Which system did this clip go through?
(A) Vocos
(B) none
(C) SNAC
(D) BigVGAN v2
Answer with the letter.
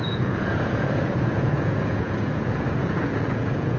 A